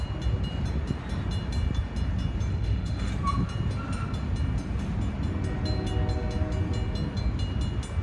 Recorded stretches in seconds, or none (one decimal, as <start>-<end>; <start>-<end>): 0.0-2.5; 3.1-8.0